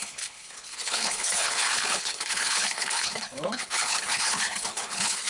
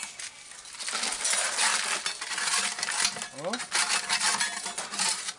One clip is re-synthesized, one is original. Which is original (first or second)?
second